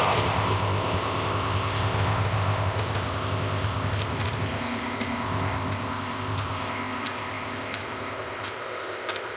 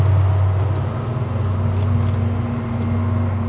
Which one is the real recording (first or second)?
second